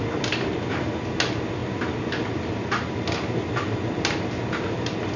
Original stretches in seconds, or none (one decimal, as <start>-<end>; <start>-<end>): 0.0-5.2

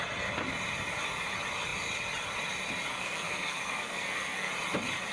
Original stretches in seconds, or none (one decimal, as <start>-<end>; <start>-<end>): 0.0-2.9; 4.5-5.1

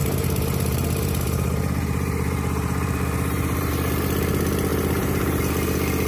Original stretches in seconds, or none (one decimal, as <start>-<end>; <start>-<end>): 3.7-4.7; 5.4-6.1

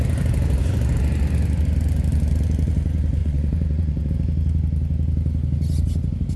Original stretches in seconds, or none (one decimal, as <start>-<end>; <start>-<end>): 0.0-3.2; 4.1-6.4

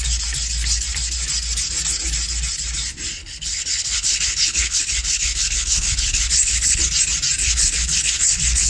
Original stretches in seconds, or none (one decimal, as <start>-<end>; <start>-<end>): 0.0-3.2; 6.8-7.4

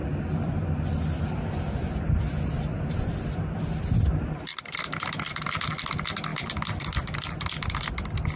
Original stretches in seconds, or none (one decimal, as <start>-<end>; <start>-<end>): none

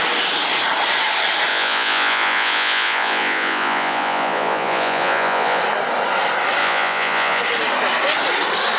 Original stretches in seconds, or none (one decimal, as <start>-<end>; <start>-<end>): 0.0-1.5; 5.6-6.6; 7.4-8.8